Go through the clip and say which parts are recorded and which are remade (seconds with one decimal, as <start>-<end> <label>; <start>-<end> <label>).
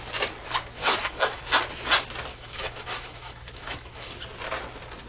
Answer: 0.0-0.8 recorded; 0.8-1.4 remade; 1.4-2.3 recorded; 2.3-4.1 remade; 4.1-5.1 recorded